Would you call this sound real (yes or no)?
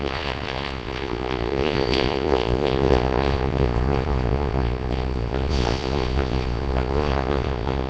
no